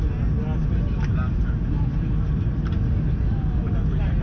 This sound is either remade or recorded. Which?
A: recorded